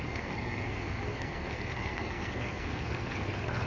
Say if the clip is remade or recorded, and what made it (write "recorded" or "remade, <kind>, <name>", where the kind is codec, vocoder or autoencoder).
remade, codec, SNAC